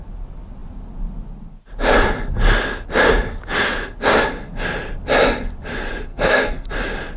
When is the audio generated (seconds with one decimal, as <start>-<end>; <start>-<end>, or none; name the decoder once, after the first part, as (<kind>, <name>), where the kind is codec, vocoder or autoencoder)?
6.1-6.7 (codec, SNAC)